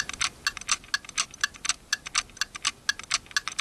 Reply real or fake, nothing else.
real